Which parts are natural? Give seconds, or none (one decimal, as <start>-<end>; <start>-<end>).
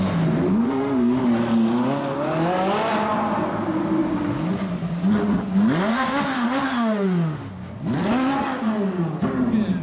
0.0-0.6; 1.2-5.9; 7.5-9.8